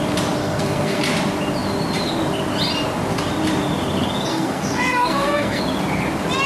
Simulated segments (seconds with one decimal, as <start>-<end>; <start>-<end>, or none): 0.4-1.0; 4.3-5.6